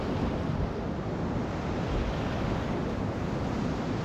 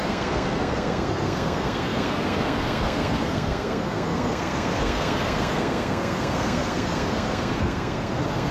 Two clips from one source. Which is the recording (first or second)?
first